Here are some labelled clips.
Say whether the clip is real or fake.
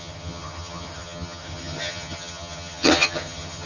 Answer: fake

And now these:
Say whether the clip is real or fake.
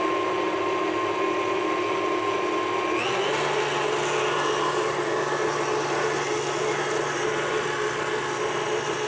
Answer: real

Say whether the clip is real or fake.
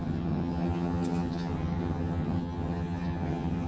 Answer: fake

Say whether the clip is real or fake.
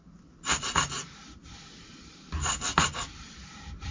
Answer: real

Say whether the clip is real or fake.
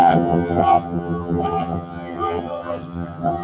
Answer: fake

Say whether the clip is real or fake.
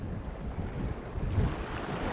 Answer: real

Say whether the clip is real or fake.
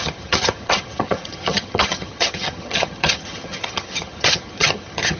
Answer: fake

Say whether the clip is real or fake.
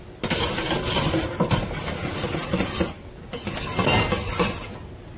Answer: real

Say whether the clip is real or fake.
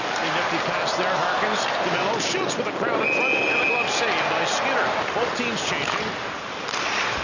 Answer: real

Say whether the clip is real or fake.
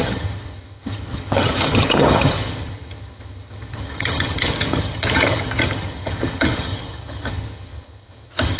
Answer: fake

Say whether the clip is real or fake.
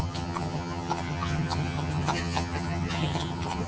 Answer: fake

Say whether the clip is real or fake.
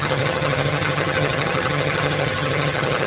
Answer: fake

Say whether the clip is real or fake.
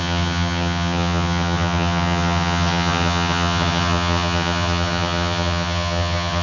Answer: fake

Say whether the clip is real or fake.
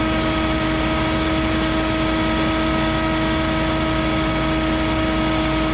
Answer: real